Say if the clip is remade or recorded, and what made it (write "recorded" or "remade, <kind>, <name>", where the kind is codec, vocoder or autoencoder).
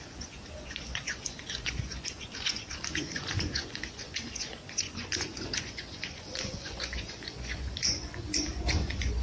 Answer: remade, vocoder, Vocos